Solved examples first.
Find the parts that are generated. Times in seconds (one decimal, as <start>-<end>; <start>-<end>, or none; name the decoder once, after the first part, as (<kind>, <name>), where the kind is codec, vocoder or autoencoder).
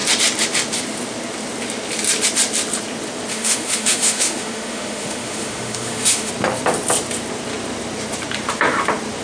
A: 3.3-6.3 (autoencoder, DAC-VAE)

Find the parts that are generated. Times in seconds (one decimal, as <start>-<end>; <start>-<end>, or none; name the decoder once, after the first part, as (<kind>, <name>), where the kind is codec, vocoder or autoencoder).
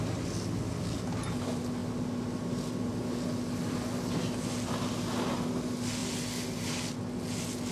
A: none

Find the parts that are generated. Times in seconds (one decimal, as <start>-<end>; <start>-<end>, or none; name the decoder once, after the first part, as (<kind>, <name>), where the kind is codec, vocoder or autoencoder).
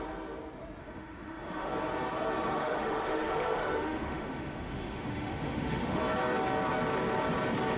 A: 0.8-1.7 (autoencoder, DAC-VAE); 2.5-6.0